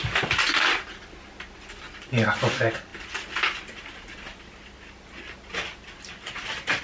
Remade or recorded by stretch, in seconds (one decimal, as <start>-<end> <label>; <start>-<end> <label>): 0.0-6.8 recorded